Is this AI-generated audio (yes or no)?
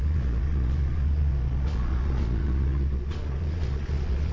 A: yes